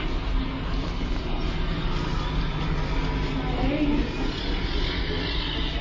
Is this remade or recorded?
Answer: recorded